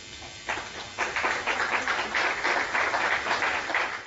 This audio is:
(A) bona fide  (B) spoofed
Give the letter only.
A